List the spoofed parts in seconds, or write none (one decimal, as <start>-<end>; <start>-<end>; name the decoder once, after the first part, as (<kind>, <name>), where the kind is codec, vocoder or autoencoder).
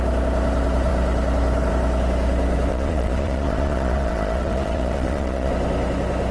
2.7-5.5 (vocoder, Vocos)